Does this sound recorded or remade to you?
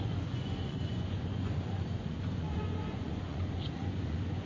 remade